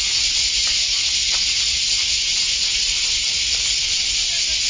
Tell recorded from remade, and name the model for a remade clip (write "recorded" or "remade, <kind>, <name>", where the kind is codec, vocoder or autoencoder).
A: recorded